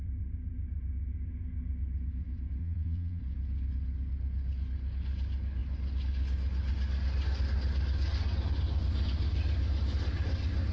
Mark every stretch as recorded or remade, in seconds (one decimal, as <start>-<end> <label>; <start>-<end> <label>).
0.0-2.6 recorded; 2.6-3.2 remade; 3.2-10.7 recorded